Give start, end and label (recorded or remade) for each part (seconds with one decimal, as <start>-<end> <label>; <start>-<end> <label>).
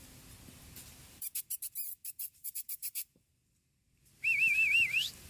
0.0-1.0 recorded; 1.0-3.4 remade; 3.4-5.3 recorded